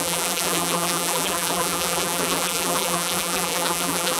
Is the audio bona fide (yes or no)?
no